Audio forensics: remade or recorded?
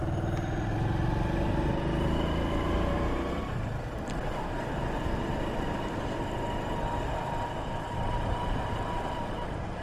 recorded